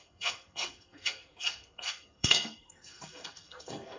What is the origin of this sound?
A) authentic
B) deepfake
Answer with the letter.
B